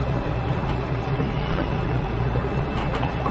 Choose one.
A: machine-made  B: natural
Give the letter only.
A